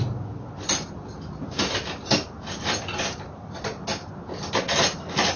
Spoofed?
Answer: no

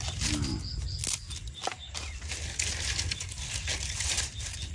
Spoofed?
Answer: no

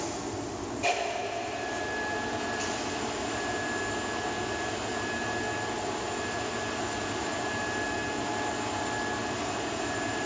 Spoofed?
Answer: no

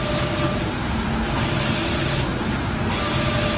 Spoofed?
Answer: no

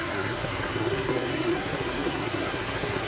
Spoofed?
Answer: yes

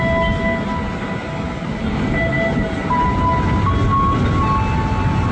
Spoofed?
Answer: no